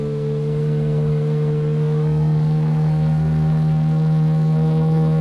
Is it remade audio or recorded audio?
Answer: remade